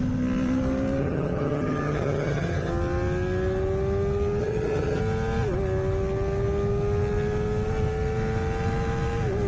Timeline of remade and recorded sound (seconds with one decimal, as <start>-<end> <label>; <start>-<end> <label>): 0.0-1.0 recorded; 1.0-2.7 remade; 2.7-4.4 recorded; 4.4-5.0 remade; 5.0-9.5 recorded